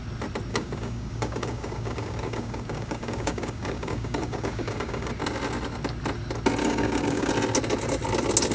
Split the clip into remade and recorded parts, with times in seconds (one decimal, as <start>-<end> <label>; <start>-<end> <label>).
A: 0.0-0.5 recorded; 0.5-5.1 remade; 5.1-6.6 recorded; 6.6-7.3 remade; 7.3-8.5 recorded